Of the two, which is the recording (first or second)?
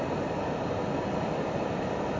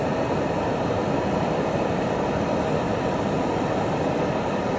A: first